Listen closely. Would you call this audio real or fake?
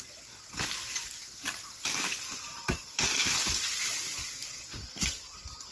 real